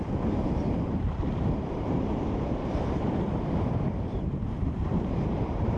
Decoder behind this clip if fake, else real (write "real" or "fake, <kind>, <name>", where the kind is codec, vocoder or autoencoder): fake, vocoder, BigVGAN v2